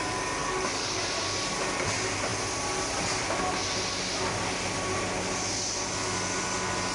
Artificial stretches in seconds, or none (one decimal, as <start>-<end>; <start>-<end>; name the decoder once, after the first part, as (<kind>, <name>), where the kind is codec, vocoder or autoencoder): 0.4-1.0 (codec, DAC)